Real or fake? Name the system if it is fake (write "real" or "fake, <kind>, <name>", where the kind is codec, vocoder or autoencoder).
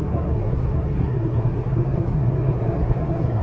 fake, codec, SNAC